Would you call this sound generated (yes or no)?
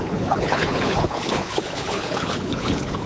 yes